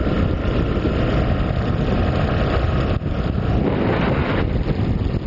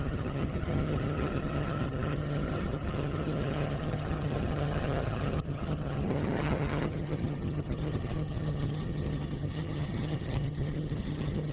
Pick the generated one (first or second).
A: second